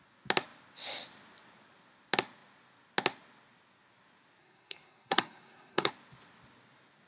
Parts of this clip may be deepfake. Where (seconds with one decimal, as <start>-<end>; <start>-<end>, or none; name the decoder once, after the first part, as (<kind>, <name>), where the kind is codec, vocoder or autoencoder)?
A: 4.4-5.9 (codec, SNAC)